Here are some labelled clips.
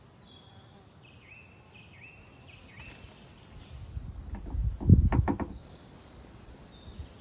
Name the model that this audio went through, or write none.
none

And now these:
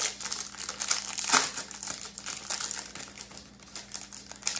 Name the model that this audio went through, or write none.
none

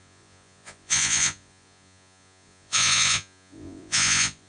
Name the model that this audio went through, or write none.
vocoder, Vocos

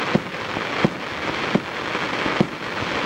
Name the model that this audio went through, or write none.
none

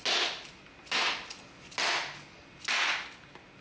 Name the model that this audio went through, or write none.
none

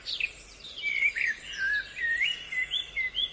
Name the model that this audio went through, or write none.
none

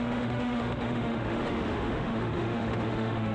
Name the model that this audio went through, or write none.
autoencoder, DAC-VAE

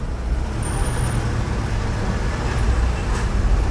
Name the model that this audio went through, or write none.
none